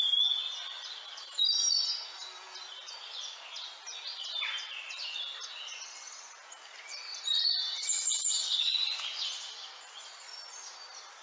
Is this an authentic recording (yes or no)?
yes